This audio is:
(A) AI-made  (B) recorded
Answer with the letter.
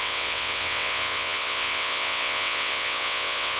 A